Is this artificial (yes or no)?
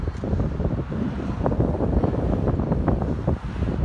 no